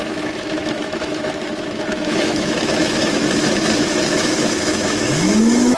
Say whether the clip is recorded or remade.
remade